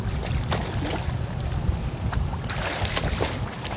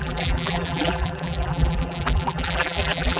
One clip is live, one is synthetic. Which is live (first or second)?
first